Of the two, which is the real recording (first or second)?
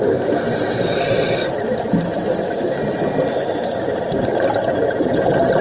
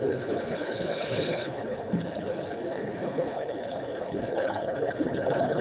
first